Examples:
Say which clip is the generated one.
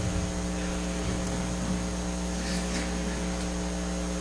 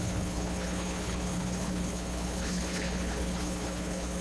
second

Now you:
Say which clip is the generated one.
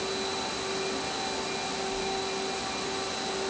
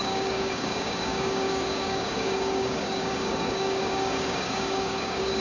second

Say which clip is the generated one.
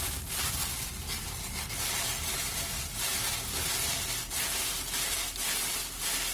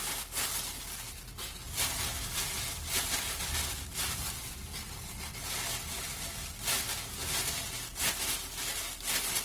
first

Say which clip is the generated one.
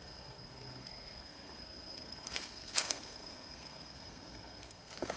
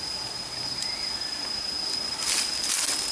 first